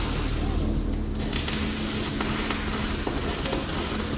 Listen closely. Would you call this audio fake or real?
real